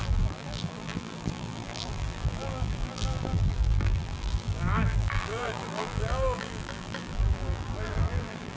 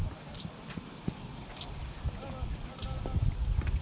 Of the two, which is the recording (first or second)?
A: second